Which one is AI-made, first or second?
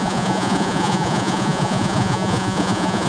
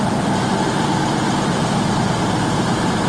first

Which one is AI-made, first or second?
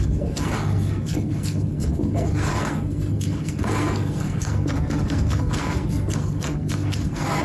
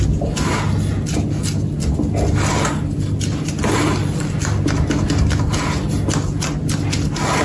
first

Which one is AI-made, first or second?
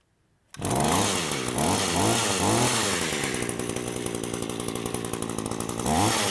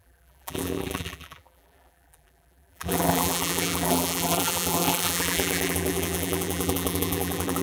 second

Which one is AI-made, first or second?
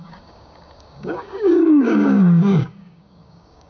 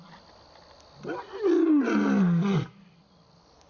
first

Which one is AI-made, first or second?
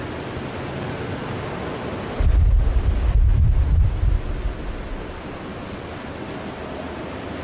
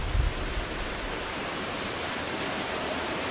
second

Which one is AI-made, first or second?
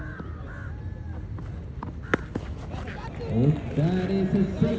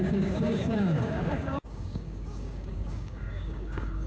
second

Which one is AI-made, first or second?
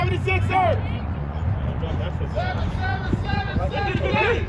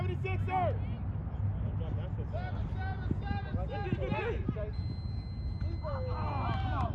first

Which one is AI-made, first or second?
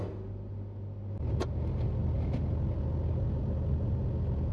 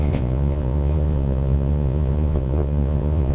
second